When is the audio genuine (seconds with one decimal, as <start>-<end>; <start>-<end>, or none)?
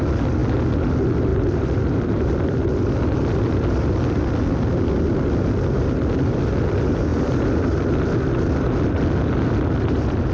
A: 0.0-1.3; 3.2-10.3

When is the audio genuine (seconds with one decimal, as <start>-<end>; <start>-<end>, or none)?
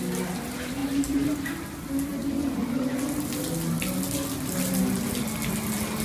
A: 0.0-0.8; 1.4-6.0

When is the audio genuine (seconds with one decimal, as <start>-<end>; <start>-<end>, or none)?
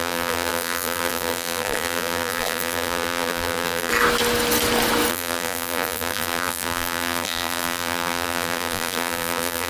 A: 3.9-5.1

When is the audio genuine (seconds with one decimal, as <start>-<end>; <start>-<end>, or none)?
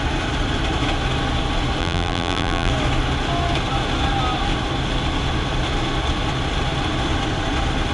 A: 0.0-1.8; 2.7-7.9